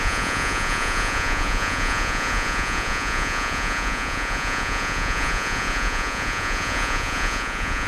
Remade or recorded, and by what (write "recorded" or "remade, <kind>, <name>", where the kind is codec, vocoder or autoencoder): remade, vocoder, Vocos